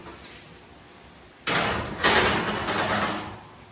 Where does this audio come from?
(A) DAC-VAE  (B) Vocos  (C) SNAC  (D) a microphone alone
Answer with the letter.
D